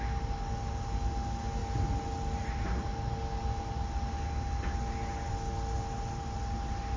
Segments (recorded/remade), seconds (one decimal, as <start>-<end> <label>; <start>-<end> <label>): 0.0-7.0 recorded